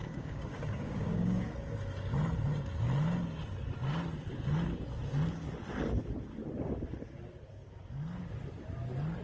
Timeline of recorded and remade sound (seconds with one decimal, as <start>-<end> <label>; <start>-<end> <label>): 0.0-1.5 remade; 1.5-9.2 recorded